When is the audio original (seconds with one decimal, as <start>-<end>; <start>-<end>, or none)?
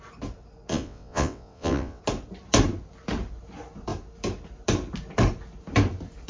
0.0-0.7; 2.0-6.3